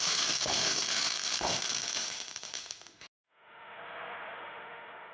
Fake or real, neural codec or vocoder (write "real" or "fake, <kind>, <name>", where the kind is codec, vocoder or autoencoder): fake, autoencoder, DAC-VAE